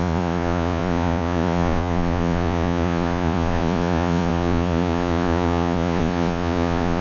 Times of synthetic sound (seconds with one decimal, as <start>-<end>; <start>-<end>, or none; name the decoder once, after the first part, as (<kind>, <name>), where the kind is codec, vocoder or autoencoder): 0.0-7.0 (vocoder, Vocos)